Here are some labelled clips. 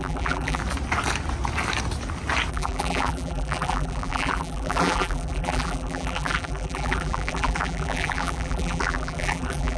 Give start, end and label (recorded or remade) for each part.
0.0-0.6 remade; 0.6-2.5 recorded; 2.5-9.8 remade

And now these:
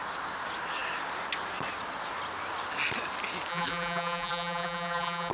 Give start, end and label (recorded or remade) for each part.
0.0-3.5 recorded; 3.5-5.3 remade